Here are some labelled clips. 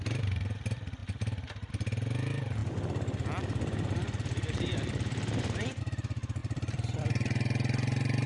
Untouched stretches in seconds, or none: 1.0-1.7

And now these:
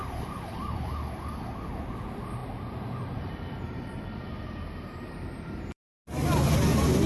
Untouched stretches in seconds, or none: 0.9-2.4; 5.8-7.1

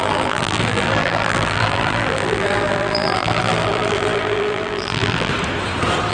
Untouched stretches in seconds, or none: 5.3-6.1

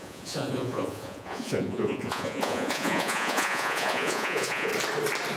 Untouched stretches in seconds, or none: 4.7-5.4